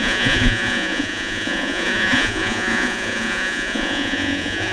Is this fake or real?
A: fake